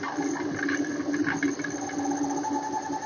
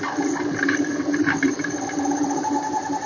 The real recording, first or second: first